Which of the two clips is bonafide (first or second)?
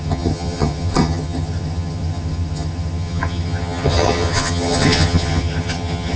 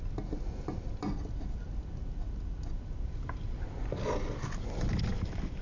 second